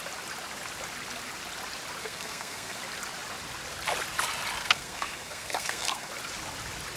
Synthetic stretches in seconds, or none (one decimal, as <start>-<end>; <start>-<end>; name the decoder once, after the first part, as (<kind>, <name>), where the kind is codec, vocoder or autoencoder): 2.0-2.8 (codec, SNAC); 4.6-6.1